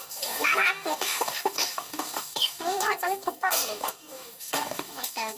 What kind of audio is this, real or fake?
fake